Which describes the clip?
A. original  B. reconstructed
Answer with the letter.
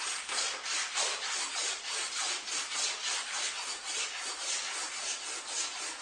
A